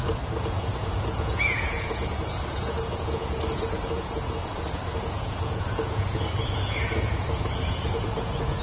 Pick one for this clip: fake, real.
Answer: fake